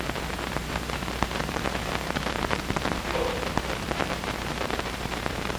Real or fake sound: fake